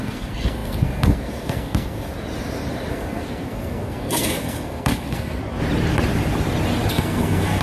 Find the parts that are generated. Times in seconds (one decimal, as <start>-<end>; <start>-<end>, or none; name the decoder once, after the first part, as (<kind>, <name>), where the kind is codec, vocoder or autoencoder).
0.0-2.1 (codec, SNAC); 2.9-5.4; 6.9-7.6